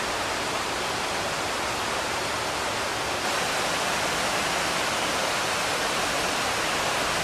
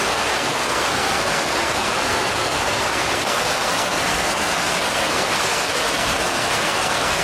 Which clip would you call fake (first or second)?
second